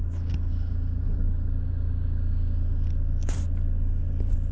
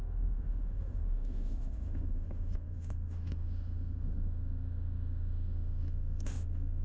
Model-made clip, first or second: second